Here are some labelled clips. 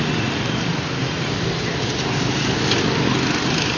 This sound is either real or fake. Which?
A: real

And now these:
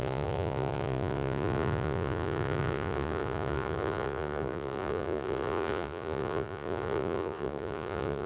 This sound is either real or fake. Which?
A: fake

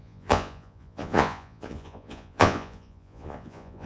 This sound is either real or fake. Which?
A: fake